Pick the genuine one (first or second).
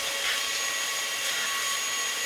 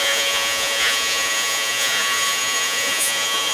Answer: first